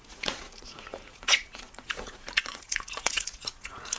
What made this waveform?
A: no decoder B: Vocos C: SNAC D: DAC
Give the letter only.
B